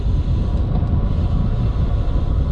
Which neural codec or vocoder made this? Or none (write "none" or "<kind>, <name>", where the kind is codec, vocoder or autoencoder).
none